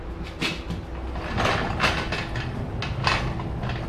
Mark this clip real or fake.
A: real